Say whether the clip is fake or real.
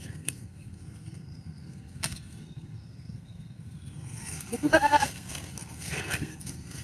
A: fake